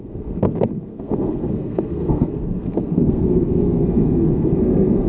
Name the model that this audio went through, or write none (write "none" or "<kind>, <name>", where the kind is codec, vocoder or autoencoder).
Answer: codec, SNAC